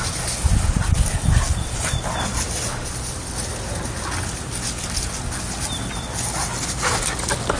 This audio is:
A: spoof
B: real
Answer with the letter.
B